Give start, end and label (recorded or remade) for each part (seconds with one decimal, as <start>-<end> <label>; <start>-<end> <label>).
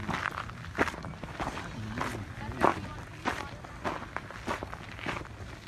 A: 0.0-5.7 recorded